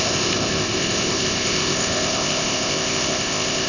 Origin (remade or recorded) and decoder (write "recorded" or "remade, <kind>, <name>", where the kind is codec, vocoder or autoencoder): remade, codec, ZipCodec